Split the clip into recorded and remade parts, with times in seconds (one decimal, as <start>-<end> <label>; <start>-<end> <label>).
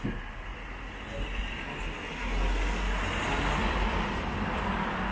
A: 0.0-3.6 recorded; 3.6-5.1 remade